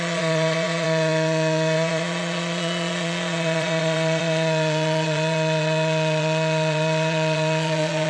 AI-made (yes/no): yes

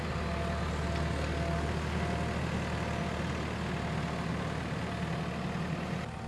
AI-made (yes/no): no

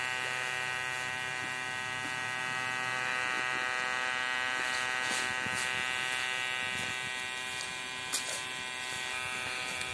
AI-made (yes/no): no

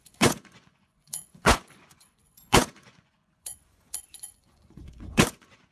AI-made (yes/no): yes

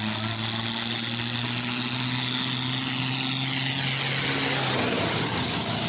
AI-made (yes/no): no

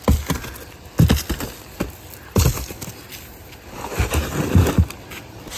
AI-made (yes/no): no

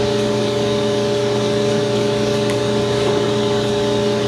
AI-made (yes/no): yes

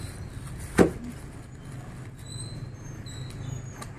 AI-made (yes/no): no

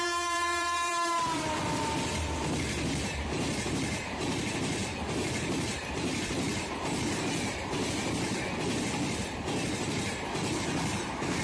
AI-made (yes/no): yes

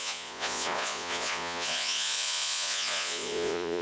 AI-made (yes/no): yes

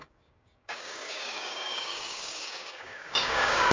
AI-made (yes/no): yes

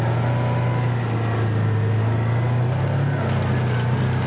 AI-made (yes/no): no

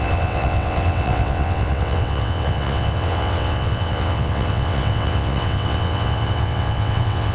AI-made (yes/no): yes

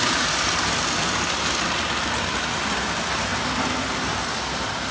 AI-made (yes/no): no